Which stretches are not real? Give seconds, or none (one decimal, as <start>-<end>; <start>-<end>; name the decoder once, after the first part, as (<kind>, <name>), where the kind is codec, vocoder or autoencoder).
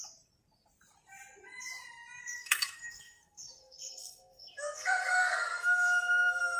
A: 2.2-6.6 (codec, SNAC)